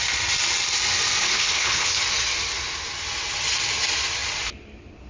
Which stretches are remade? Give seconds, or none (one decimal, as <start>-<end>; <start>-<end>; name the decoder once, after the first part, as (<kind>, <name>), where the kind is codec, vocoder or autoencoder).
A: 1.2-2.0 (codec, HILCodec)